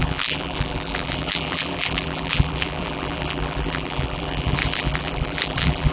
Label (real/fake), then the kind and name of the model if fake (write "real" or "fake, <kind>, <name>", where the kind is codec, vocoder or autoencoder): fake, vocoder, BigVGAN v2